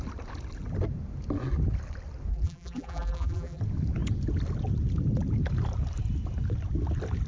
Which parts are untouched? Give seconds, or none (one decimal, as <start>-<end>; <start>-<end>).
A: 0.0-2.3; 3.6-7.3